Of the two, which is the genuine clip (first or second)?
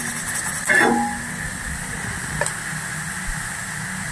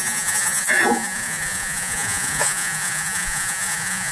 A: first